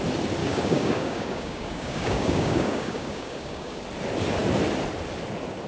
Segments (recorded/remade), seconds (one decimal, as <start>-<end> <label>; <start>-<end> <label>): 0.0-0.4 recorded; 0.4-3.8 remade; 3.8-5.7 recorded